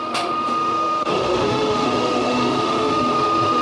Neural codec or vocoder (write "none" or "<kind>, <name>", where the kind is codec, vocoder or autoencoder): autoencoder, DAC-VAE